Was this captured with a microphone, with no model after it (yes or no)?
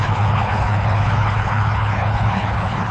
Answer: no